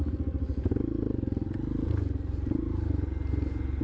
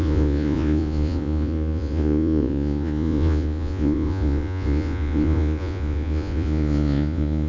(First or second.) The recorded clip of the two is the first